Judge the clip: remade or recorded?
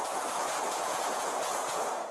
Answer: remade